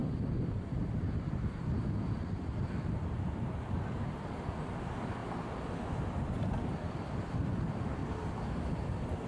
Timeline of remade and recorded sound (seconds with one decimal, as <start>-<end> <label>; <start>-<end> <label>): 0.0-5.2 remade; 5.2-6.7 recorded; 6.7-8.0 remade; 8.0-8.6 recorded; 8.6-9.3 remade